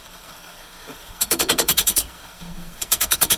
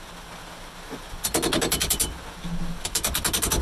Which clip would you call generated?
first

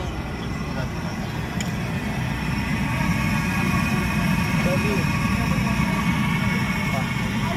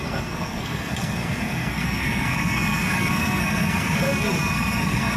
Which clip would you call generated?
second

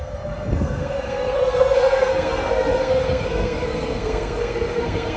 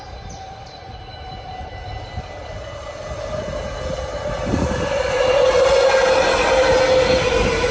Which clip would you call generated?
first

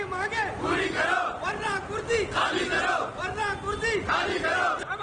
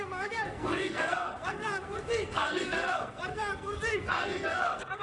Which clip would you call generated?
second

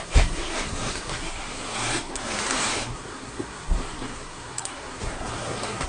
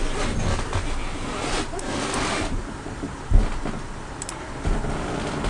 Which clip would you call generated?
first